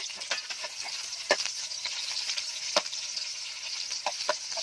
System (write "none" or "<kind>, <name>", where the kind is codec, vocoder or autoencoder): none